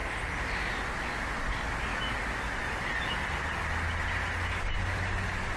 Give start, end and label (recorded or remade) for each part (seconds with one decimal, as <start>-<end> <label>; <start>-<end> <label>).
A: 0.0-5.6 recorded